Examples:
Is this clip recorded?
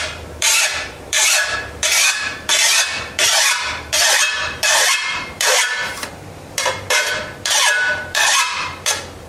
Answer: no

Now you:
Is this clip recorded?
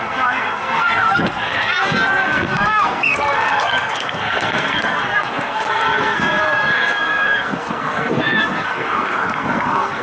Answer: no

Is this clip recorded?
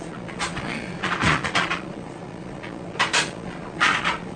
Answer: no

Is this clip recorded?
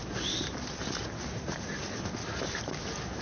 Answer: yes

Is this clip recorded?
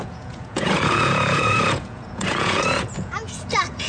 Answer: no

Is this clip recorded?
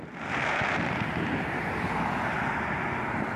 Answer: yes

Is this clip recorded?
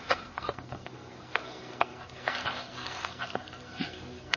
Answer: no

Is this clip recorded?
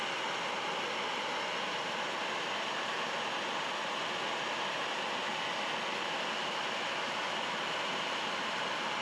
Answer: yes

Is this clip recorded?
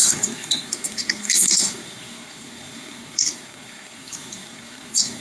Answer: no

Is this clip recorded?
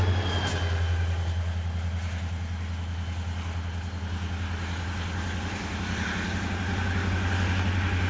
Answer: yes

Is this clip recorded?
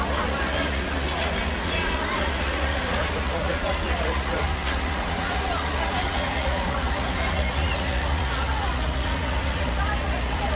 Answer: no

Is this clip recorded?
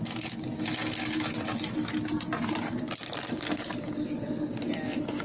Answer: yes